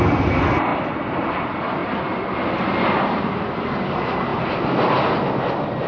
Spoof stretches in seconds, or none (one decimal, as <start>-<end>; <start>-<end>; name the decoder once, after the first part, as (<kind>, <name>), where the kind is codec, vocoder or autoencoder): 1.8-3.3 (vocoder, BigVGAN v2)